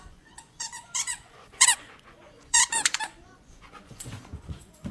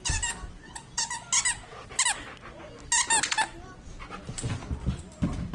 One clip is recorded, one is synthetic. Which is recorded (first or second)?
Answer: second